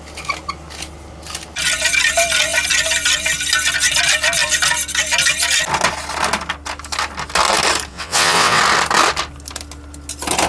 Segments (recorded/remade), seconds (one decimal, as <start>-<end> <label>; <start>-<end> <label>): 0.0-7.9 recorded; 7.9-8.6 remade; 8.6-10.5 recorded